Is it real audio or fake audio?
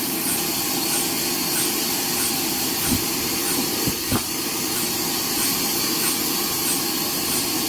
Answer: real